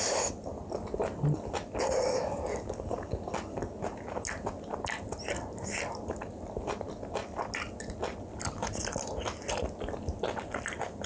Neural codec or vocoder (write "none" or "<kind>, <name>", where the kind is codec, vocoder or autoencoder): none